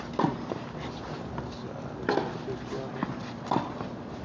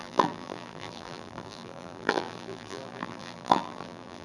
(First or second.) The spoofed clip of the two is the second